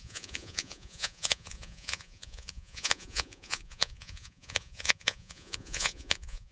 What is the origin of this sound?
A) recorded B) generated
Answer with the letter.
B